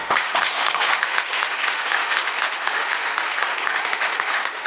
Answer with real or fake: fake